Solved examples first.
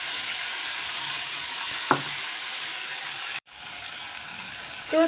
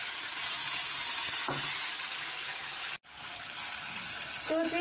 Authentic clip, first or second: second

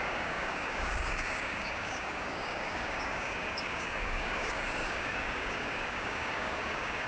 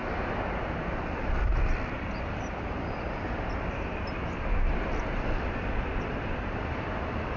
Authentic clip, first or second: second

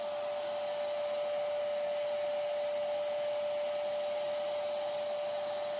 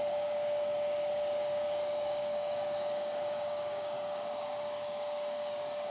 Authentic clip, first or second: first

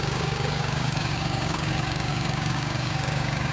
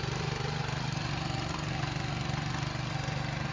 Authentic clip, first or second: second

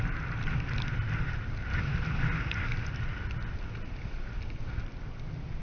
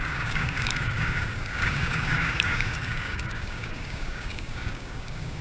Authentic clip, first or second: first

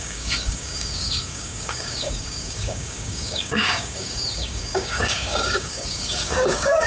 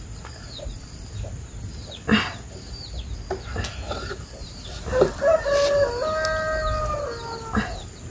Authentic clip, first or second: second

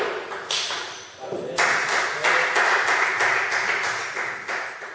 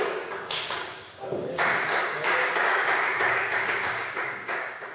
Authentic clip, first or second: first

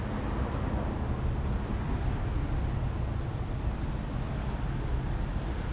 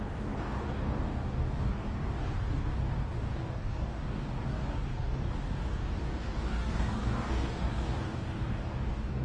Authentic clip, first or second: first